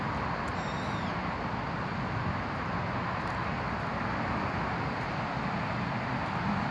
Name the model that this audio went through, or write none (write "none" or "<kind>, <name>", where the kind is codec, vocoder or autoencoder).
none